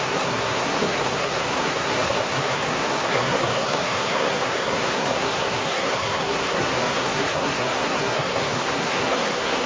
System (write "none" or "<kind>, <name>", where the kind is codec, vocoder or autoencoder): codec, SNAC